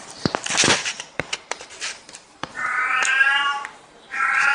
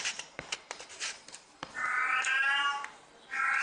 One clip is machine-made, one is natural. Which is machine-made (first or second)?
first